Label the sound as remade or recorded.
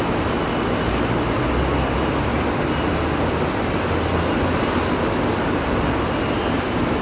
recorded